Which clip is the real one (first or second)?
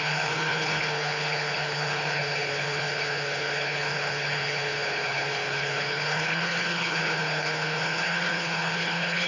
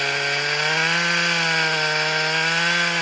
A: second